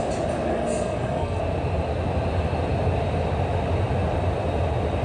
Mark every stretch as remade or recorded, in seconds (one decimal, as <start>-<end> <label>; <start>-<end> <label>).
0.0-0.5 recorded; 0.5-1.4 remade; 1.4-5.0 recorded